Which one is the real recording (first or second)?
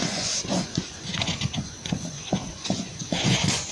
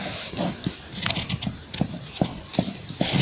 second